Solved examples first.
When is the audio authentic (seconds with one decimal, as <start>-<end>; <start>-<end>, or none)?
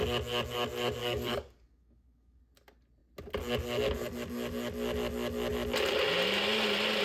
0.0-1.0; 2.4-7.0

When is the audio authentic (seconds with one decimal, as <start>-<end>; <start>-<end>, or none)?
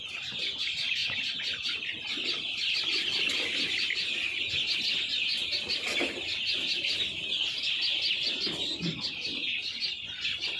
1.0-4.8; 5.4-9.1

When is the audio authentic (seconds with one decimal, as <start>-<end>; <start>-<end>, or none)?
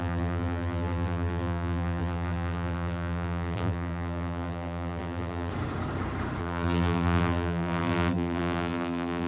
5.5-6.4